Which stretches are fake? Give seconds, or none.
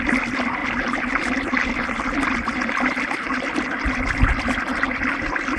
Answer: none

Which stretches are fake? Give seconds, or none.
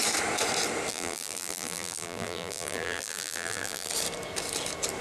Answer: 0.9-3.9 (vocoder, BigVGAN v2)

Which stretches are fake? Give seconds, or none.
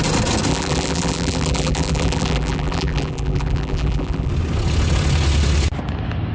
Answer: 0.5-4.3 (vocoder, BigVGAN v2)